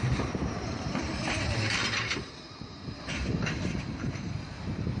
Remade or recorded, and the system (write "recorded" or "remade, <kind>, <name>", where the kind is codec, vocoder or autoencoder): remade, vocoder, BigVGAN v2